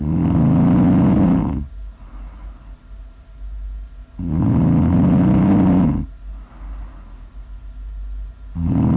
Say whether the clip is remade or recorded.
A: recorded